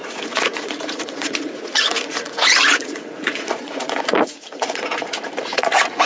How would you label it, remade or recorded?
remade